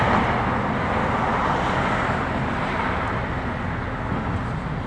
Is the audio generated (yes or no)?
no